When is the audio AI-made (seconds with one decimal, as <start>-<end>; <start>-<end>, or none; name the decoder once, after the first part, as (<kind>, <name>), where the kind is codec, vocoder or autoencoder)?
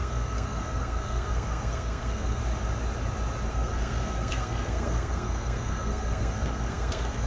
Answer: 0.0-2.4 (codec, SNAC); 3.5-7.3